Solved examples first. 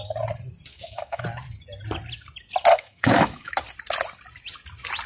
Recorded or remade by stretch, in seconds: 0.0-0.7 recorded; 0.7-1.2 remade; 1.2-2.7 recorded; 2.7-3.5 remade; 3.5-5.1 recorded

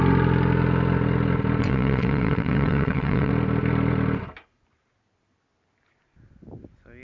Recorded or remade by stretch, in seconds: 0.0-1.6 recorded; 1.6-3.3 remade; 3.3-7.0 recorded

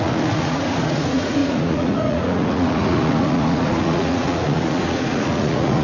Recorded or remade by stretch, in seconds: 0.0-5.8 remade

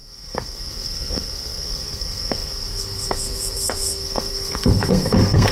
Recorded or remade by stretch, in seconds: 0.0-5.5 remade

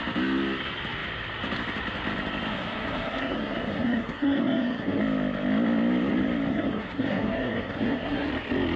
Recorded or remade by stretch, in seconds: 0.0-2.5 recorded; 2.5-5.0 remade; 5.0-6.5 recorded; 6.5-8.3 remade; 8.3-8.8 recorded

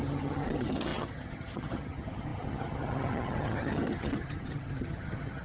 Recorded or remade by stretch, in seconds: 0.0-5.4 remade